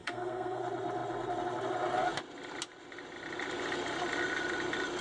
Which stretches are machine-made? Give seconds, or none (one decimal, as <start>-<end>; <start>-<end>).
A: 0.0-0.6